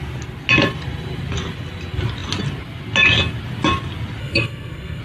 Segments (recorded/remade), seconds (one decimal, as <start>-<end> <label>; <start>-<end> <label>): 0.0-4.2 recorded; 4.2-5.0 remade